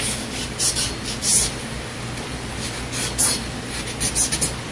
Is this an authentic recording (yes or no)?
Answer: yes